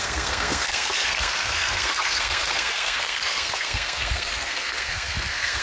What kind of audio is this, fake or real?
fake